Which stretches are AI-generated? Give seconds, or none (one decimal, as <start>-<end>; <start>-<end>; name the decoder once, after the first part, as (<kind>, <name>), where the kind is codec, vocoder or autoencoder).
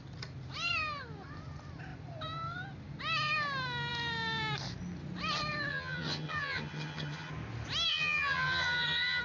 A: 5.7-7.3 (vocoder, HiFi-GAN); 7.9-9.2